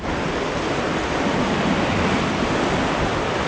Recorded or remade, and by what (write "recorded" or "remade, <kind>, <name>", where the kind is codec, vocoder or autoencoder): recorded